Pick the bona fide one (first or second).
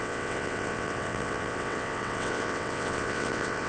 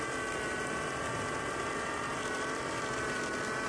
second